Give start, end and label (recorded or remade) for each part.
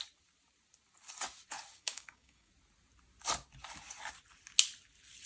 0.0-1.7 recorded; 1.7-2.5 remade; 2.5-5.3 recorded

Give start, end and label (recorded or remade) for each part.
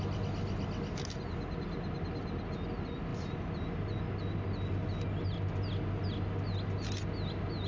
0.0-7.7 recorded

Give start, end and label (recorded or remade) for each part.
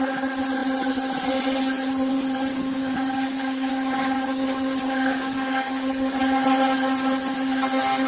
0.0-2.5 recorded; 2.5-6.2 remade; 6.2-8.1 recorded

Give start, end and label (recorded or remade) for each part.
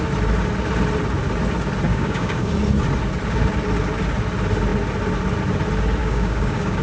0.0-1.9 recorded; 1.9-2.5 remade; 2.5-6.0 recorded; 6.0-6.8 remade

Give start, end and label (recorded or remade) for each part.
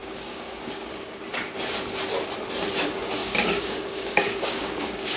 0.0-1.2 remade; 1.2-3.2 recorded; 3.2-5.2 remade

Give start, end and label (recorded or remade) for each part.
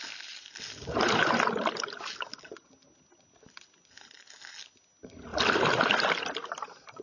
0.0-7.0 recorded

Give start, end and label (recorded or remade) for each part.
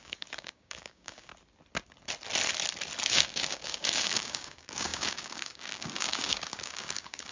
0.0-1.3 remade; 1.3-3.1 recorded; 3.1-7.3 remade